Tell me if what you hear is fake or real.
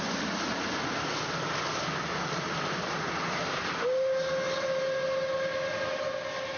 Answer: real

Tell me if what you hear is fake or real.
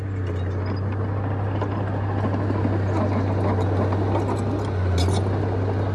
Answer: real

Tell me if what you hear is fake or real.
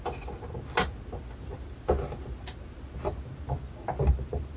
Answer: real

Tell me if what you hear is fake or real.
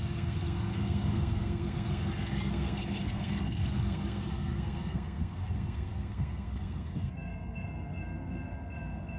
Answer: fake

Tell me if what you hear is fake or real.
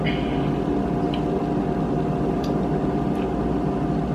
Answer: real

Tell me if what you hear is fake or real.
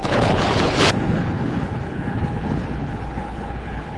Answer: fake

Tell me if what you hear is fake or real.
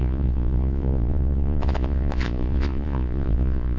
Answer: fake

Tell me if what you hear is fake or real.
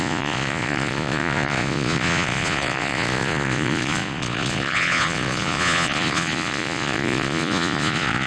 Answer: fake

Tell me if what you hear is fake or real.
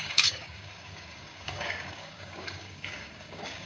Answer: fake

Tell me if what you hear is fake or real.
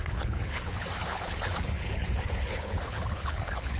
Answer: fake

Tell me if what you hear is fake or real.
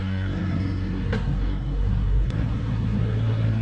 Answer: fake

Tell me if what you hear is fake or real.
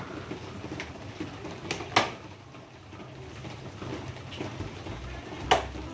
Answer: real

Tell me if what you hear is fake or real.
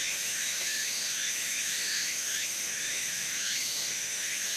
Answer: fake